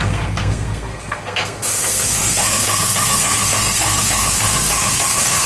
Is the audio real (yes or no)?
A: no